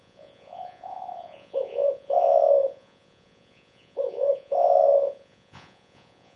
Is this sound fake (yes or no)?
yes